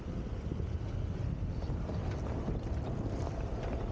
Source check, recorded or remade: recorded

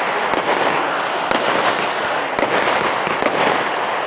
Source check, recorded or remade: recorded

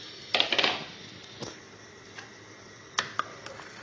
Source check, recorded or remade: recorded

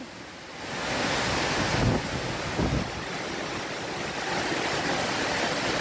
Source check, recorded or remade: recorded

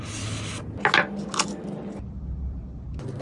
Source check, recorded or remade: recorded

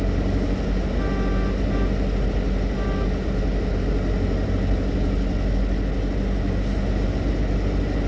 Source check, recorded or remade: recorded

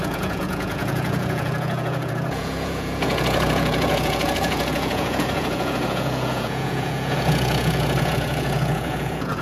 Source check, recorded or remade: remade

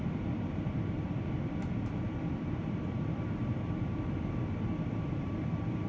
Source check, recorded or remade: remade